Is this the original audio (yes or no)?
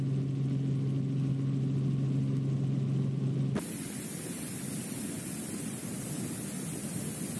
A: yes